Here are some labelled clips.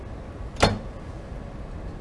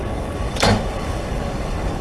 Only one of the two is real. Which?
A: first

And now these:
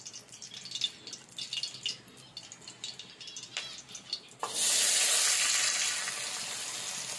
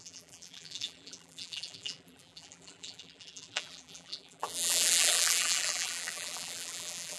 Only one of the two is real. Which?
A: first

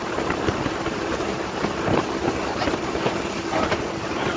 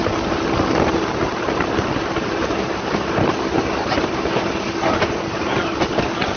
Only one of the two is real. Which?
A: second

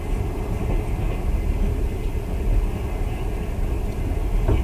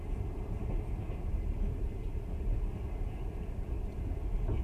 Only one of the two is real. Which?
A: first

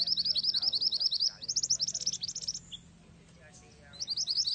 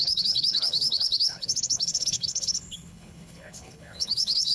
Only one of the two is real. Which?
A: first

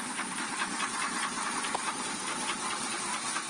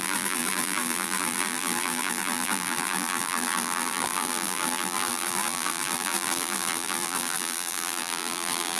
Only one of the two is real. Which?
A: first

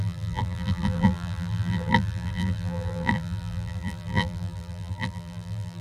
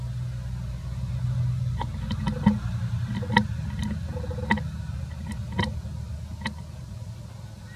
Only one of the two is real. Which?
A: second